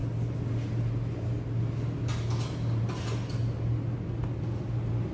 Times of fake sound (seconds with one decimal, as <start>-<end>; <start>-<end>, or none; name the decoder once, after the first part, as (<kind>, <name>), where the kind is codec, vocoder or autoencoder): none